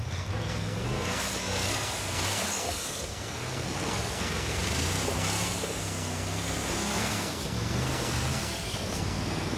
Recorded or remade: remade